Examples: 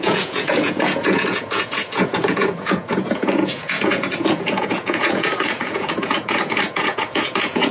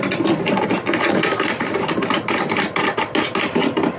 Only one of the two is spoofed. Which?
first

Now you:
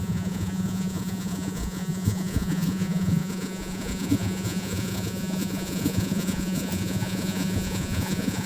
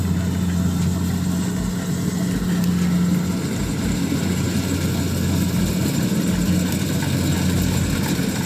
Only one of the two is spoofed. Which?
first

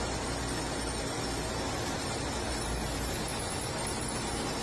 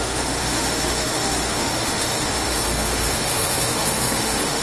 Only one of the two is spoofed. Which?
second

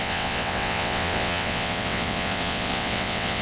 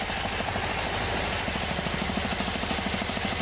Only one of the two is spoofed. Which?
first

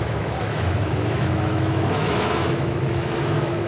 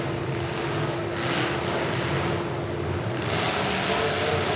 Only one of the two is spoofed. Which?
first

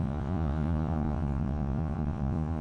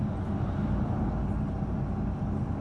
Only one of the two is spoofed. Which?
first